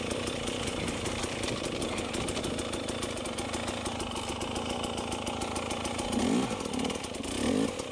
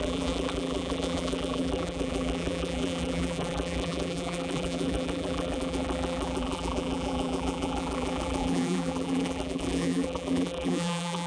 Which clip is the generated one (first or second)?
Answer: second